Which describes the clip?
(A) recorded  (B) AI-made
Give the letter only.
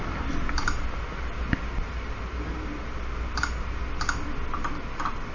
A